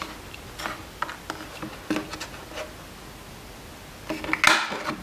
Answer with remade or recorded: recorded